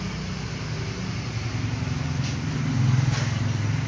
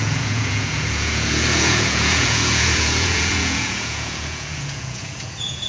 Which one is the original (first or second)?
first